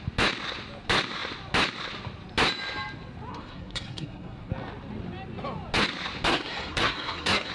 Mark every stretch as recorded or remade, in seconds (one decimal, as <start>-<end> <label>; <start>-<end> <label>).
0.0-3.3 recorded; 3.3-4.5 remade; 4.5-6.3 recorded; 6.3-7.5 remade